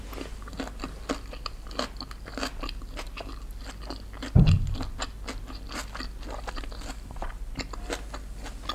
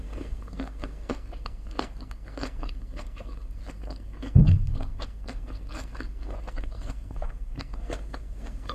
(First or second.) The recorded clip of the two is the first